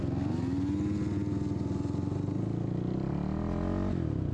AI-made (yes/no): no